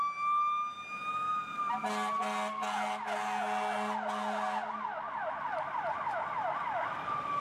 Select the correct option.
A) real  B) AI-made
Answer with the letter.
A